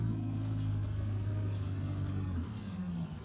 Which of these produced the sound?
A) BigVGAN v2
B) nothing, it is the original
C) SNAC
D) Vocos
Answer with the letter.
C